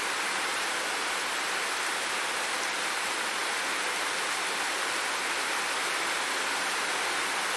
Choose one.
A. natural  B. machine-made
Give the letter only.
A